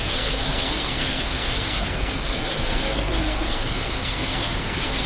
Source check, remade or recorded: remade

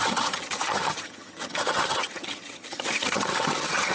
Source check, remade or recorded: remade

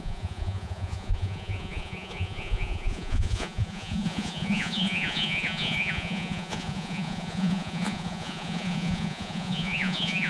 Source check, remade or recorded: remade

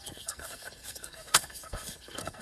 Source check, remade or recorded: remade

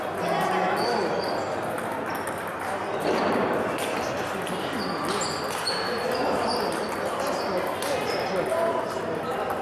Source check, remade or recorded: recorded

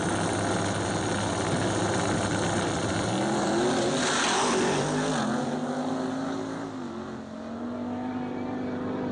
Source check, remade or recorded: recorded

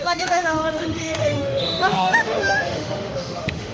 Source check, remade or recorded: remade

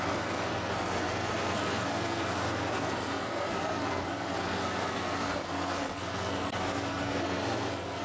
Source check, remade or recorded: remade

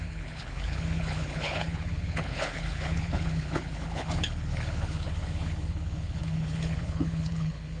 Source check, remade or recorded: remade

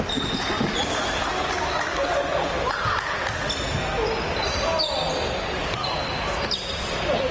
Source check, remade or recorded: recorded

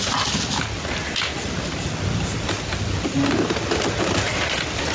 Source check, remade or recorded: recorded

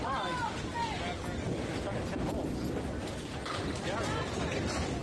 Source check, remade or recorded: recorded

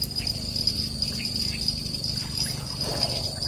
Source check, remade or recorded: recorded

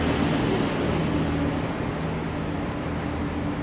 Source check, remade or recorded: recorded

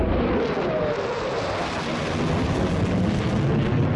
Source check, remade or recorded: recorded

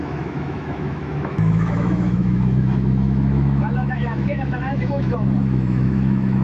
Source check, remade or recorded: remade